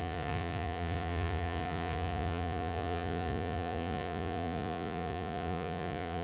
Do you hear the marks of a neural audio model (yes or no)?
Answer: yes